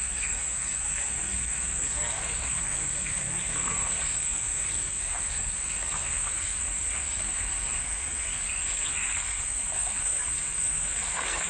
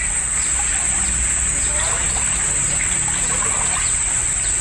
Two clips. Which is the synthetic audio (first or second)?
first